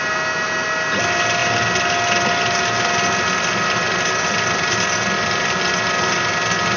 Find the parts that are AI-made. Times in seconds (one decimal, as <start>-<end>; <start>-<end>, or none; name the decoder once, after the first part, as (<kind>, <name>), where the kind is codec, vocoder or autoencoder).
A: none